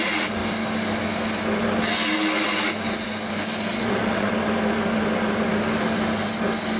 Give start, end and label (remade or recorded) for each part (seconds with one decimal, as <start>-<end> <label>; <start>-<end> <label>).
0.0-3.7 recorded; 3.7-4.3 remade; 4.3-6.8 recorded